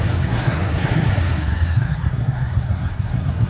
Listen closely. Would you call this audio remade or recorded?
remade